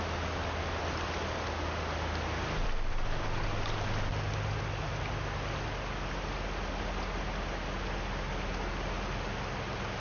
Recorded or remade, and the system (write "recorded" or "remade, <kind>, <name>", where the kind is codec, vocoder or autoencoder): recorded